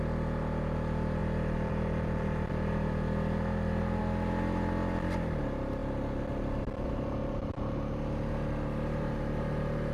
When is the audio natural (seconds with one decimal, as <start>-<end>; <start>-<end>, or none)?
0.0-9.9